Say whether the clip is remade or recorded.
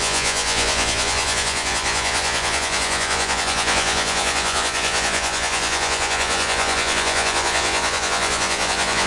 remade